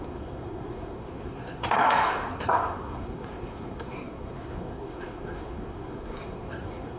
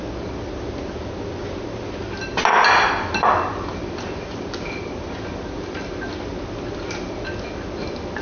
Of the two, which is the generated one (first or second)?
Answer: first